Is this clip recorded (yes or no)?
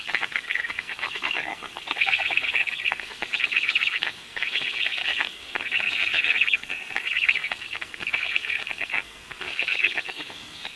no